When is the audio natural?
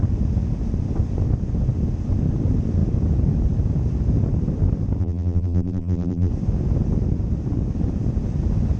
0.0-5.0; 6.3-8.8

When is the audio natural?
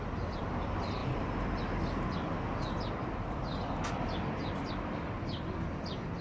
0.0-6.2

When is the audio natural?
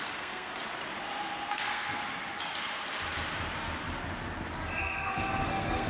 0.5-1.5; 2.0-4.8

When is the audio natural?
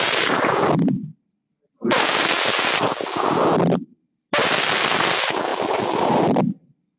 0.0-7.0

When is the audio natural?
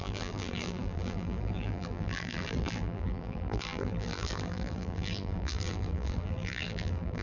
none